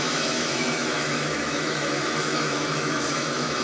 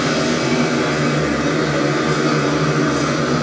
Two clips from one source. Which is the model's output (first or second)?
first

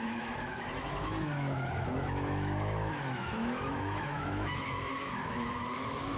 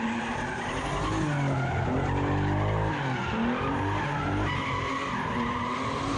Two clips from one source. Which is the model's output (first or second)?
first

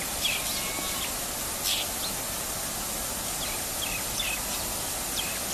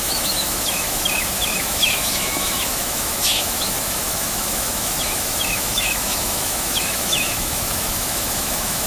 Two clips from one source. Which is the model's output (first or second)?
second